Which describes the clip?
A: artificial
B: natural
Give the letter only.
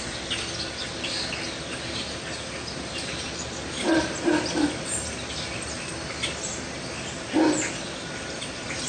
B